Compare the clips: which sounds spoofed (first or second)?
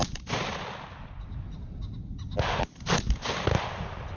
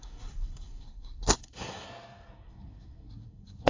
second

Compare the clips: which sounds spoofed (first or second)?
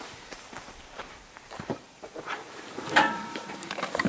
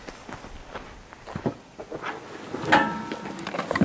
first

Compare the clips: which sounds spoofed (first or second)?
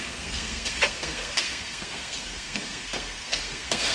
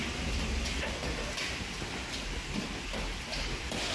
first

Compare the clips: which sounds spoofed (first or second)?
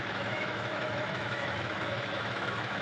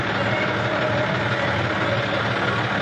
first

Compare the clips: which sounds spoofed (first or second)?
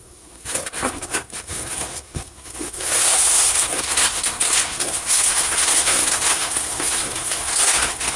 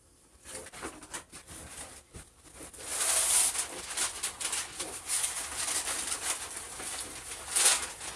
first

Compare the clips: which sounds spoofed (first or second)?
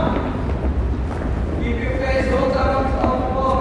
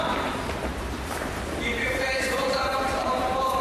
second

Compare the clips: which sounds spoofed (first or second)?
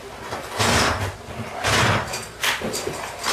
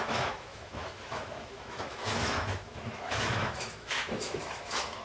second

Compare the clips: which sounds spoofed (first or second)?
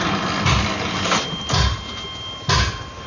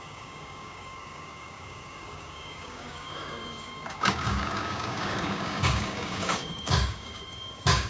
second